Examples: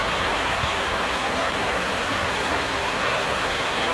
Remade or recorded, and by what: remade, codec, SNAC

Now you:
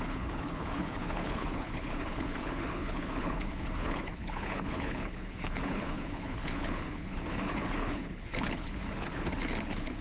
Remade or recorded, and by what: remade, codec, HILCodec